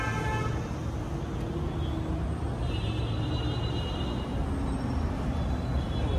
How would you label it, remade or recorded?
recorded